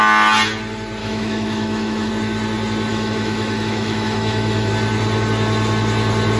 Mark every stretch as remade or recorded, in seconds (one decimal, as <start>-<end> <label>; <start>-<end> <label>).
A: 0.0-1.0 recorded; 1.0-2.1 remade; 2.1-2.9 recorded; 2.9-4.7 remade; 4.7-6.4 recorded